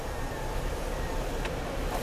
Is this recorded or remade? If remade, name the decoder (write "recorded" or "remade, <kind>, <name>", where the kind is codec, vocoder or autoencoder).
recorded